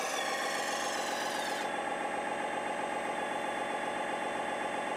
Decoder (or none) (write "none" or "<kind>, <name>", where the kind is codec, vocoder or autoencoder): none